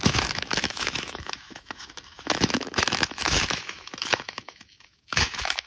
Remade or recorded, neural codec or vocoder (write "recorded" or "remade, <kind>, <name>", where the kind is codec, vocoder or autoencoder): remade, autoencoder, DAC-VAE